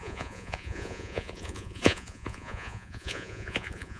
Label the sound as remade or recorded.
remade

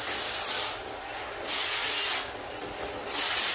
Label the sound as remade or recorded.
recorded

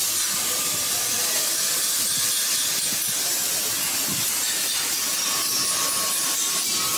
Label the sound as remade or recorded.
recorded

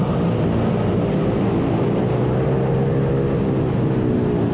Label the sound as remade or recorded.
recorded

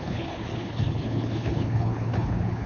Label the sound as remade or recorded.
remade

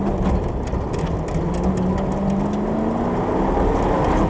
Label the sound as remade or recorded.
recorded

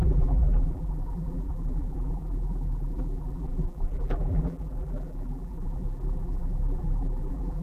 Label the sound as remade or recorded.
remade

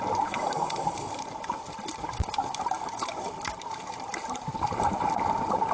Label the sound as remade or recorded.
remade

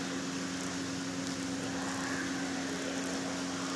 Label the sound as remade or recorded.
recorded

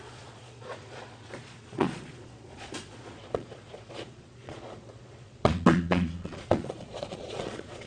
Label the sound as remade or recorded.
remade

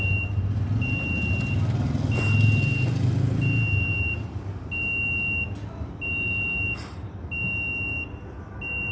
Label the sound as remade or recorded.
recorded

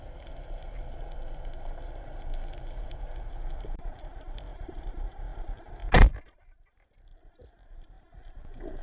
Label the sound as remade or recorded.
recorded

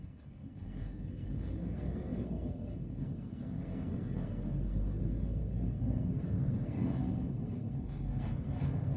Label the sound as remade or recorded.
remade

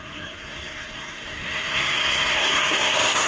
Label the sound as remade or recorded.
remade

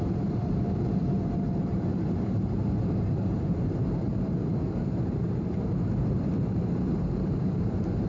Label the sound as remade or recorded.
remade